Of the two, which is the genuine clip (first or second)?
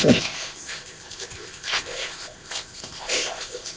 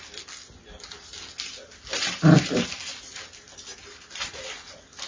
second